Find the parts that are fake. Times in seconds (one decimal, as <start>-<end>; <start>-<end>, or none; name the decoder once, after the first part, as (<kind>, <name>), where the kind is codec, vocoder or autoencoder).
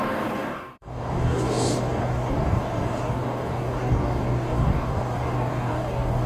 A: 0.0-6.3 (codec, DAC)